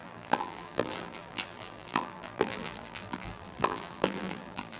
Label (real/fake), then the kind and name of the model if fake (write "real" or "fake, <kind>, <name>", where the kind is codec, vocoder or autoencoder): fake, vocoder, BigVGAN v2